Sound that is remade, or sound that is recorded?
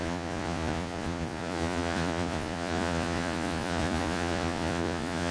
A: remade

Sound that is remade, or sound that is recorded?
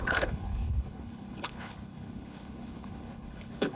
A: remade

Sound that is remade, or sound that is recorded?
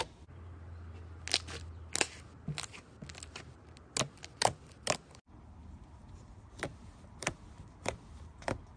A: recorded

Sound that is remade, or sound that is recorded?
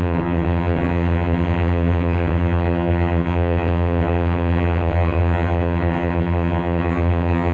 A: remade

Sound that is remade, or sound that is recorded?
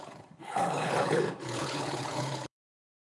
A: remade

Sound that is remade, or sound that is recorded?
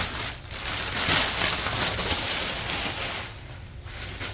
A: recorded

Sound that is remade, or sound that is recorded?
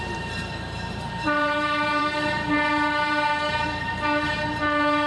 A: remade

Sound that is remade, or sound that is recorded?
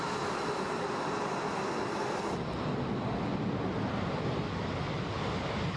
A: recorded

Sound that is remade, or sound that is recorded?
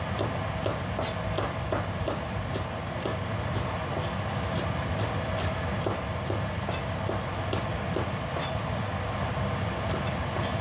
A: recorded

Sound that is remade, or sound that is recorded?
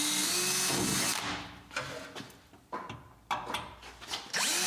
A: recorded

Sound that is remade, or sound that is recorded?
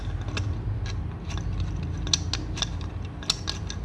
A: recorded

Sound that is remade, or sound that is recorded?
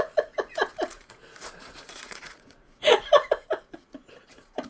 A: remade